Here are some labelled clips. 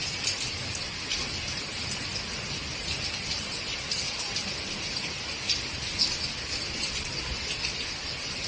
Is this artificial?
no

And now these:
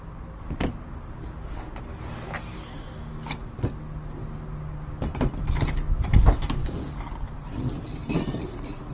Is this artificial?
no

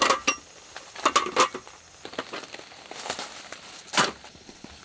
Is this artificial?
no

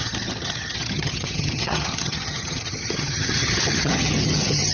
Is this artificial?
yes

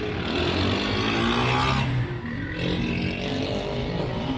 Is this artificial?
no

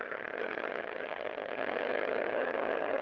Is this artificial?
yes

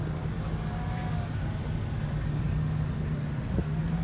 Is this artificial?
no